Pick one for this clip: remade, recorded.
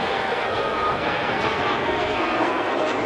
remade